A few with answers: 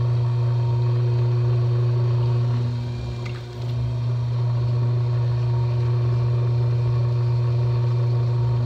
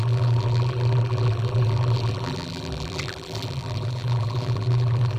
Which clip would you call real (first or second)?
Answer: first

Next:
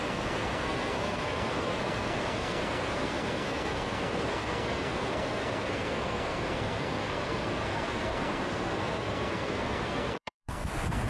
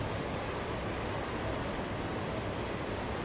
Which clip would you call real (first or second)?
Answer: second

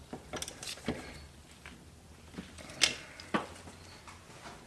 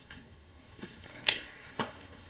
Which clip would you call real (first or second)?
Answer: first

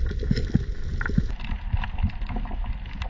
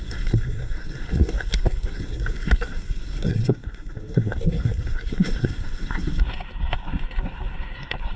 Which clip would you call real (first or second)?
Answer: first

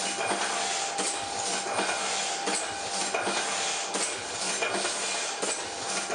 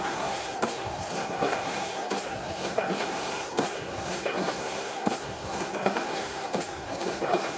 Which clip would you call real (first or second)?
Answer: first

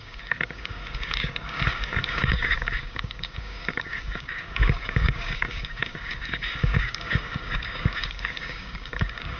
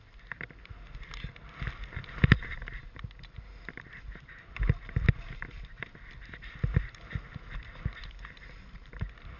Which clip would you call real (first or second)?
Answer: second